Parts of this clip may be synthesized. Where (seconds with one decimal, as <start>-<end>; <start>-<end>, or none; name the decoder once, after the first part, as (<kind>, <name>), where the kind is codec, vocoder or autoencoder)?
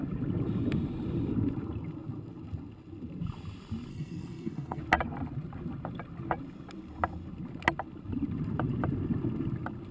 3.9-4.8 (codec, SNAC)